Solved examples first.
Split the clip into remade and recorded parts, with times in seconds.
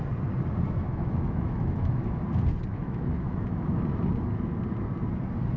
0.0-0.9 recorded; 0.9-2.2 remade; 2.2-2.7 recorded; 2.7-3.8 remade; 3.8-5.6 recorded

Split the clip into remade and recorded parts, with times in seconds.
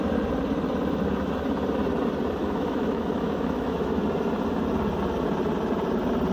0.0-2.4 recorded; 2.4-4.0 remade; 4.0-6.3 recorded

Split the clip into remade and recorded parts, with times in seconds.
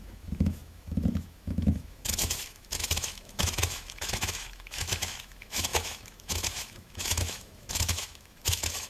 0.0-8.9 remade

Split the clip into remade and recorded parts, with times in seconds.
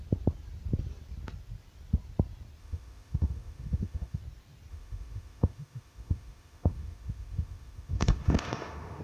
0.0-2.6 recorded; 2.6-4.2 remade; 4.2-4.7 recorded; 4.7-9.0 remade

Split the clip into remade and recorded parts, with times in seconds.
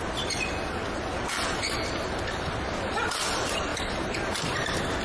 0.0-5.0 recorded